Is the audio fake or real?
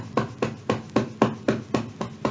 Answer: real